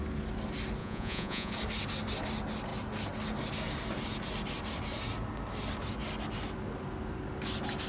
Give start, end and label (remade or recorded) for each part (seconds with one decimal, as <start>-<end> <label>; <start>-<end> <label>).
0.0-0.8 recorded; 0.8-1.5 remade; 1.5-7.9 recorded